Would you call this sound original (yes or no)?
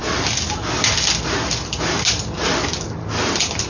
yes